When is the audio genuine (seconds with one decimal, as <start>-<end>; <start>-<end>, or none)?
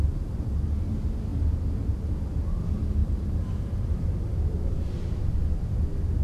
0.0-1.3; 2.0-3.0; 3.9-6.2